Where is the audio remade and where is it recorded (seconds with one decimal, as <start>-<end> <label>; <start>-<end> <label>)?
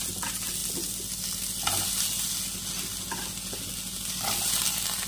0.0-5.1 recorded